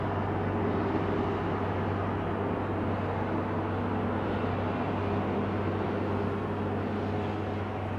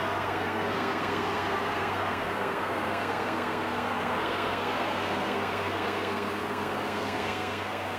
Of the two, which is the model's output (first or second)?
second